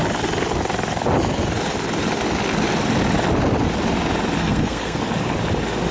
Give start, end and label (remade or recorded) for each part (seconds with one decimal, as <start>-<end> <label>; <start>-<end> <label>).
0.0-4.4 recorded; 4.4-5.0 remade; 5.0-5.9 recorded